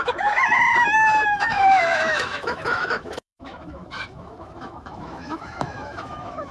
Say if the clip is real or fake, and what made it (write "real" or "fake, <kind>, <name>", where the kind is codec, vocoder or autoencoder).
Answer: fake, autoencoder, DAC-VAE